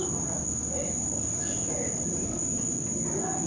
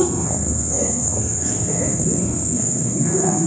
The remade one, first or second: second